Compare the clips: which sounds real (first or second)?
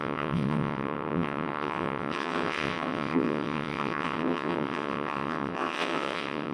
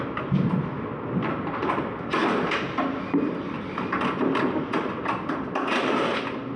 second